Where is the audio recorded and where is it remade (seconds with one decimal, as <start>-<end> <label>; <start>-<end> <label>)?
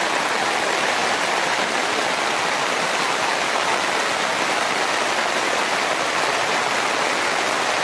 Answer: 0.0-7.8 recorded